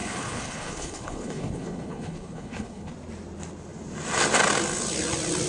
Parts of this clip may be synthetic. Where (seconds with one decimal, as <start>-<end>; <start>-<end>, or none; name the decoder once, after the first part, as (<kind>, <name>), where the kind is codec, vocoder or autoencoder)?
0.0-2.9 (codec, HILCodec)